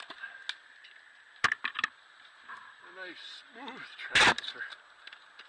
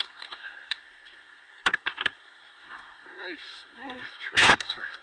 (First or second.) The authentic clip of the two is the first